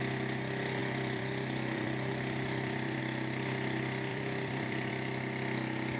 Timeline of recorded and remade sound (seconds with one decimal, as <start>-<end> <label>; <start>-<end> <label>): 0.0-0.8 recorded; 0.8-3.0 remade; 3.0-4.1 recorded; 4.1-4.9 remade; 4.9-6.0 recorded